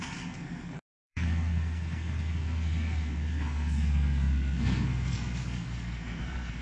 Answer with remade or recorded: remade